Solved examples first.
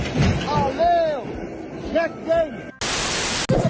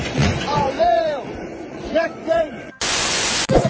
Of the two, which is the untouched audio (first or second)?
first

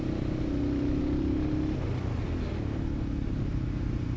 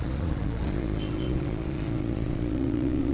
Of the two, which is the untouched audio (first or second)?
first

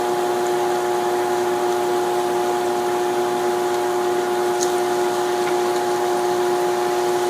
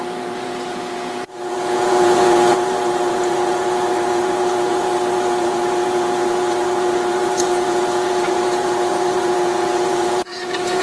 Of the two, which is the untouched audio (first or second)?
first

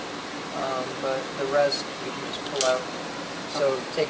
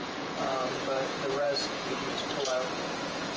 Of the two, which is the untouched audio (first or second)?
first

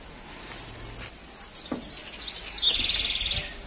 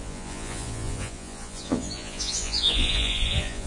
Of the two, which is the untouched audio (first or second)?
first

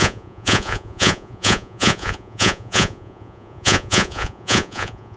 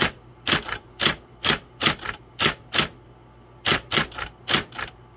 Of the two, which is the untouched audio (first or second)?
second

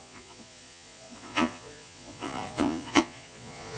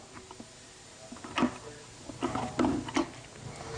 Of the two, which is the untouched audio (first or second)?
second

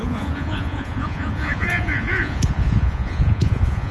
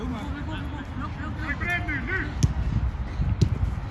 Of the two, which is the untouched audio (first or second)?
second